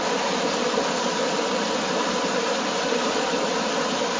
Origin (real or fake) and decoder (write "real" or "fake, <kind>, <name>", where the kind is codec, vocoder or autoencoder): real